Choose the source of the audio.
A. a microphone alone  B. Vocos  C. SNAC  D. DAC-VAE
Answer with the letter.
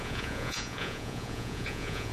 B